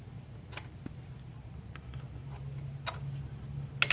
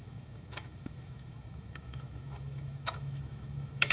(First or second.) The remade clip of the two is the second